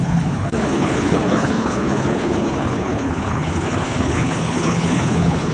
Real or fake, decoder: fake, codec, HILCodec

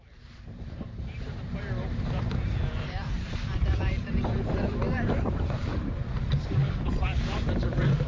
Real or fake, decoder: fake, vocoder, BigVGAN v2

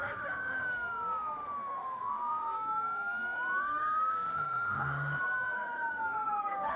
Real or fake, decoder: fake, autoencoder, DAC-VAE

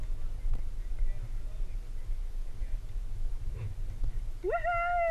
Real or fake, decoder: real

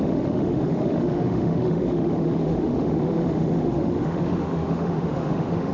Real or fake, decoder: fake, autoencoder, DAC-VAE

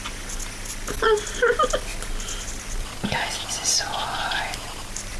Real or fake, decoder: real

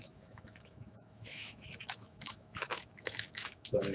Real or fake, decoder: fake, autoencoder, DAC-VAE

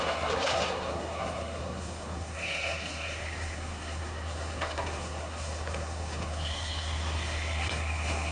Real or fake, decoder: fake, codec, SNAC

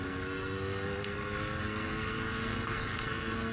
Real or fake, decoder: fake, codec, SNAC